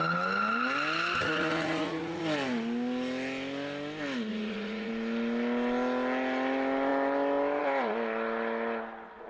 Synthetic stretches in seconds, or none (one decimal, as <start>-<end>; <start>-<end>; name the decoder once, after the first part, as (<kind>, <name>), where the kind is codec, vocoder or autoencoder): 1.2-2.2 (vocoder, Vocos); 4.3-4.9